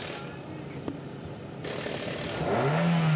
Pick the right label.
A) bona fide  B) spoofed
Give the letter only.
A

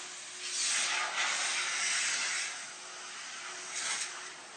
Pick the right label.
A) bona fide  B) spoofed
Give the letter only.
A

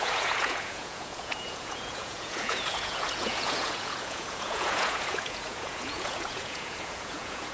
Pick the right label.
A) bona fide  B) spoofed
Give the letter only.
B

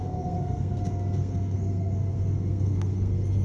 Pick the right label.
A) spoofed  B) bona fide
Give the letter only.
A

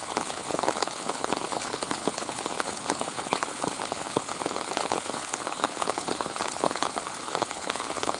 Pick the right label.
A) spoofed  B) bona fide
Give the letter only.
A